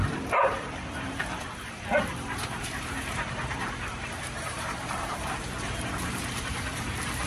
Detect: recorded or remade remade